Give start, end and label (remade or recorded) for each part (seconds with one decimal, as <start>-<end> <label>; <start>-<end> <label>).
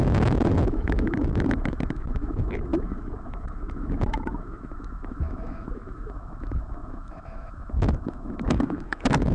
0.0-9.3 remade